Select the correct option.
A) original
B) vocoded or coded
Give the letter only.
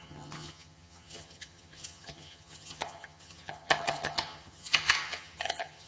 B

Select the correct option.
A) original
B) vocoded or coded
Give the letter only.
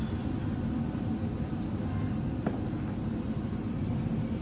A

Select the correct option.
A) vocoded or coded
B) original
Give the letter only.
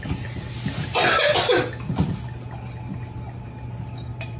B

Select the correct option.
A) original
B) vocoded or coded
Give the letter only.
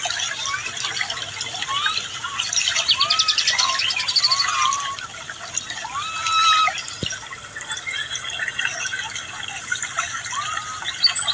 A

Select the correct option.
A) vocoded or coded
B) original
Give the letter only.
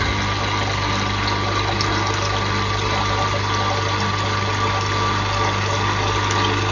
B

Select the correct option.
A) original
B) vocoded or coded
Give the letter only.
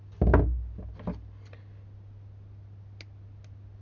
A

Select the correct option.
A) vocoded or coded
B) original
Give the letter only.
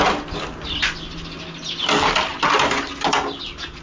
B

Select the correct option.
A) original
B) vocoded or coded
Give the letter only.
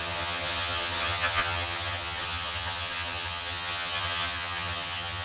B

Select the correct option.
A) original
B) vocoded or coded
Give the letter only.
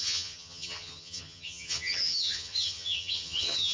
B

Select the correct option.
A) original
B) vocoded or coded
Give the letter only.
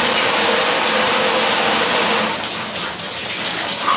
A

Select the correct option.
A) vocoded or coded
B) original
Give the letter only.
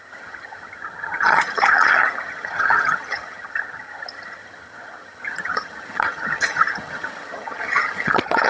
A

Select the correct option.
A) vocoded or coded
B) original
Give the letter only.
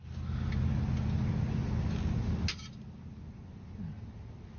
B